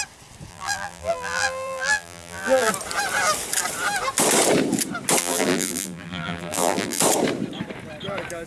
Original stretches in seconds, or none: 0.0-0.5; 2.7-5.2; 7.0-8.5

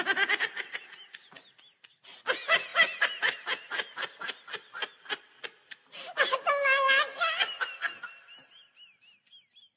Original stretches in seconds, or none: 0.0-9.8

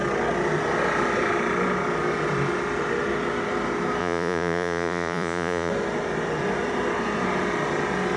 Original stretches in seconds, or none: 0.0-4.0; 5.7-8.2

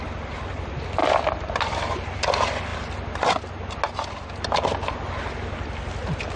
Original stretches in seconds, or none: 0.0-6.4

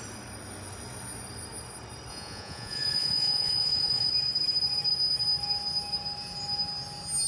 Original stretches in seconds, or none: 0.0-2.1; 4.1-7.3

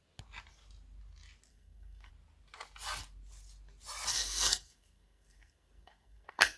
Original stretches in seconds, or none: 0.0-1.5; 2.1-4.1